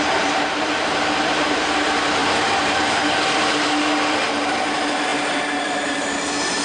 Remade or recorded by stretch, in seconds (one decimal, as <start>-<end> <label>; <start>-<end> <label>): 0.0-6.6 remade